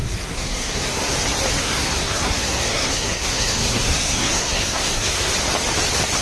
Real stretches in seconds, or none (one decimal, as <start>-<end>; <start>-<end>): 1.1-1.6; 5.3-6.2